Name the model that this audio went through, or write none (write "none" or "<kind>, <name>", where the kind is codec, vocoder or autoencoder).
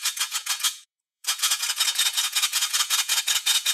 vocoder, Vocos